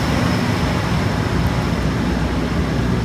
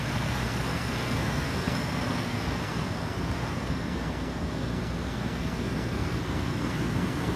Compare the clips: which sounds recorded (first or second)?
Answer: first